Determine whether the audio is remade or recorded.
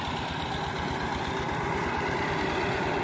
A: recorded